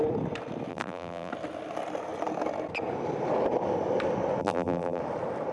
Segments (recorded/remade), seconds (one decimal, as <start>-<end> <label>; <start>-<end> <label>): 0.0-0.7 recorded; 0.7-1.3 remade; 1.3-4.4 recorded; 4.4-5.0 remade; 5.0-5.5 recorded

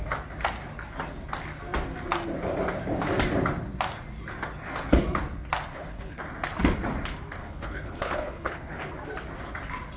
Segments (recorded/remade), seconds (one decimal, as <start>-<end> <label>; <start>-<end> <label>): 0.0-5.7 recorded; 5.7-6.2 remade; 6.2-7.4 recorded; 7.4-8.8 remade; 8.8-10.0 recorded

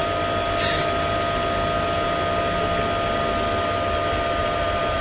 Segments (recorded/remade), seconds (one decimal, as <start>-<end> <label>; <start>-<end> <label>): 0.0-4.4 recorded; 4.4-5.0 remade

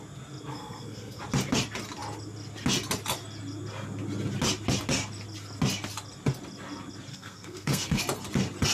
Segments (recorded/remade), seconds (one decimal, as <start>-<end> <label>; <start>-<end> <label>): 0.0-0.5 recorded; 0.5-1.2 remade; 1.2-7.1 recorded; 7.1-8.0 remade; 8.0-8.7 recorded